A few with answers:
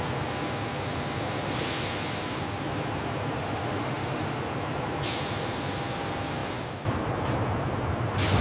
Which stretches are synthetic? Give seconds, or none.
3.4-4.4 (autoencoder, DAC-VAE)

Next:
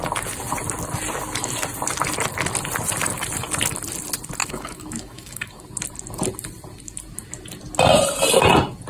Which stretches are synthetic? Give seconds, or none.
4.4-5.7 (autoencoder, DAC-VAE)

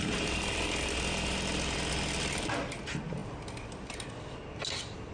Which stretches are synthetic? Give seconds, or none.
none

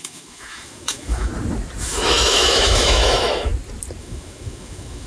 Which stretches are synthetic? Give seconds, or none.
0.0-1.3 (autoencoder, DAC-VAE); 1.8-3.5; 4.0-5.1

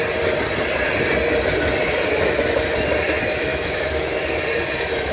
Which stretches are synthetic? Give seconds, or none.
3.5-4.4 (autoencoder, DAC-VAE)

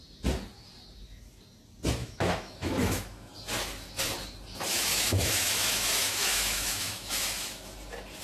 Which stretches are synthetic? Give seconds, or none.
2.0-3.3 (autoencoder, DAC-VAE); 4.9-7.6

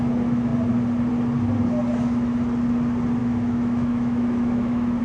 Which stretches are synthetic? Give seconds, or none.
3.2-5.0 (autoencoder, DAC-VAE)